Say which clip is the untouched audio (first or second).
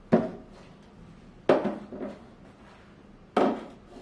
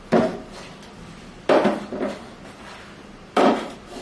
first